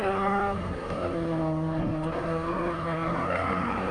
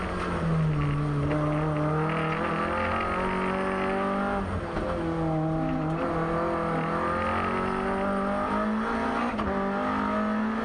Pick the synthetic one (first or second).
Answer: first